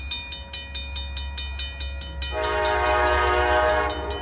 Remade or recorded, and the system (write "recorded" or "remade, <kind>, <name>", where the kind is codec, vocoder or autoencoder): recorded